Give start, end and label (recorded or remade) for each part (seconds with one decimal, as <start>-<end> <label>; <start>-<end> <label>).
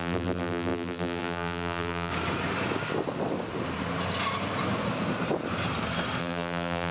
0.0-2.1 remade; 2.1-6.2 recorded; 6.2-6.9 remade